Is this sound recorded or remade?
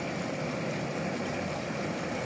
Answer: recorded